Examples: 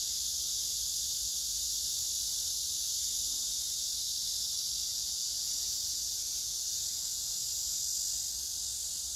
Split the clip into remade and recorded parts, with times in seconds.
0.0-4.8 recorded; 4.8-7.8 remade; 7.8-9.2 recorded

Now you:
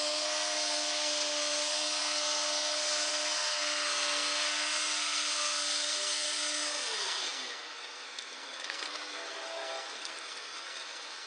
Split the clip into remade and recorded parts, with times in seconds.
0.0-11.3 remade

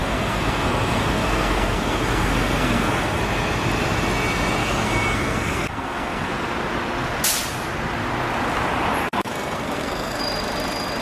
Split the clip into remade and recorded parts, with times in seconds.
0.0-3.2 remade; 3.2-4.6 recorded; 4.6-6.3 remade; 6.3-9.0 recorded; 9.0-10.2 remade; 10.2-11.0 recorded